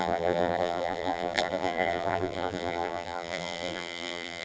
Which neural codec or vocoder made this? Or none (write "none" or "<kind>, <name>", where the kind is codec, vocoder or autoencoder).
vocoder, BigVGAN v2